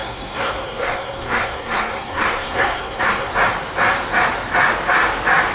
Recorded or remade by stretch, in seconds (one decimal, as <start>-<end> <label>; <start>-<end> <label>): 0.0-3.3 remade; 3.3-5.5 recorded